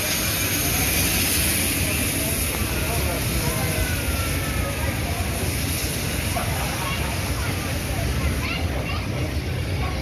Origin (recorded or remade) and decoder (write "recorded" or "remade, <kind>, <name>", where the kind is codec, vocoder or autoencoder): recorded